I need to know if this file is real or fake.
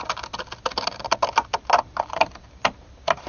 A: real